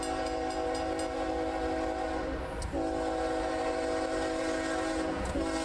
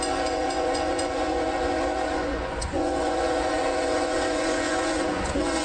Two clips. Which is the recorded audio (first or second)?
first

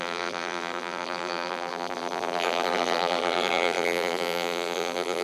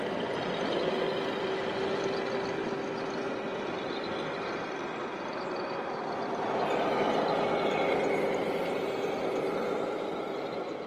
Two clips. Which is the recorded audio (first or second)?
second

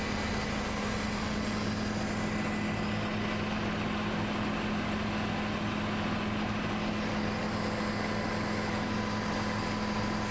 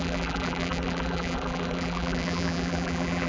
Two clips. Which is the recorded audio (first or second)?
first